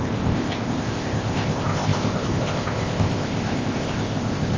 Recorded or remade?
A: remade